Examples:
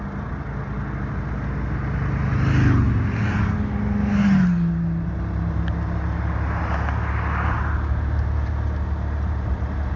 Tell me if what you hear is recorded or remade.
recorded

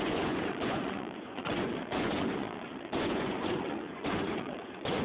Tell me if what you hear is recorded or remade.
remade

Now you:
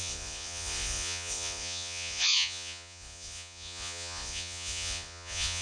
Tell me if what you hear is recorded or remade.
remade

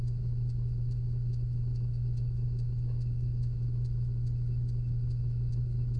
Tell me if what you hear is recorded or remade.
remade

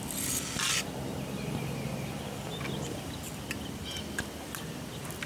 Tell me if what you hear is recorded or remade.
recorded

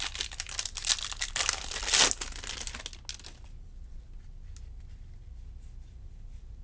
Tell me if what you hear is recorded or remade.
recorded